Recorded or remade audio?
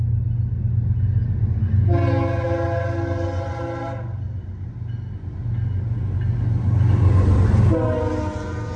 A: recorded